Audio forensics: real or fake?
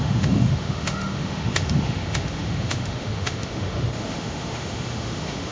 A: fake